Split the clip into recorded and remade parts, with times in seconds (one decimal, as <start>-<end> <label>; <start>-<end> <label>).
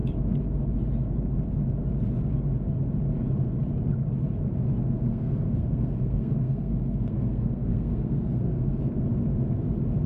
0.0-5.1 recorded; 5.1-8.8 remade; 8.8-10.1 recorded